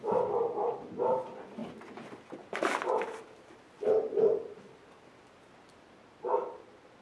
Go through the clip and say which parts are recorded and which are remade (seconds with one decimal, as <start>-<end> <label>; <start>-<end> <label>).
0.0-7.0 recorded